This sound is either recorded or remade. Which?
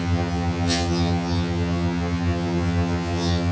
remade